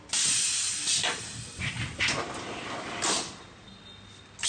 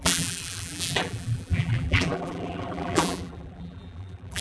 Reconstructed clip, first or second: second